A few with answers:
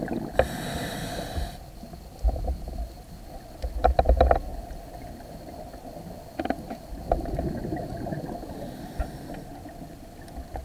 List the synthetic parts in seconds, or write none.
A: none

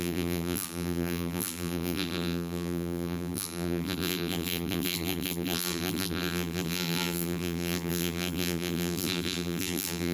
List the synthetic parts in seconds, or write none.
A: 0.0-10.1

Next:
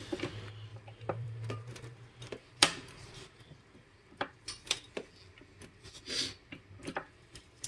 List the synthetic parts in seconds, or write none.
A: 0.7-5.1; 6.9-7.7

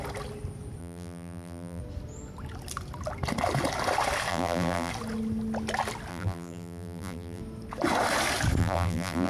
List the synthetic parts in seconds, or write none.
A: 0.8-1.8; 4.3-4.9; 6.1-7.4; 8.6-9.3

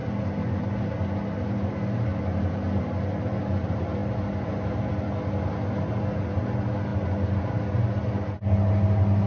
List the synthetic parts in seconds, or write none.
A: none

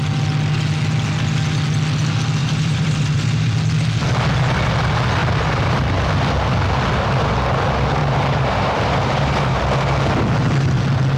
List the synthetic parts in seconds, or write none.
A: 2.4-3.5; 8.0-9.6

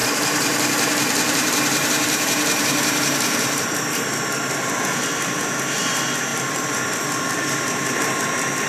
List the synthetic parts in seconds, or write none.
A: 0.0-4.7; 6.3-8.0

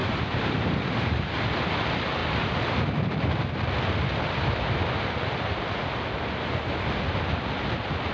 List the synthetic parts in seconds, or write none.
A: 0.0-1.3